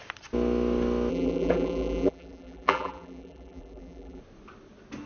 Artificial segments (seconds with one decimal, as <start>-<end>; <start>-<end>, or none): 1.1-4.2